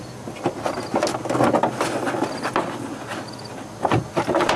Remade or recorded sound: recorded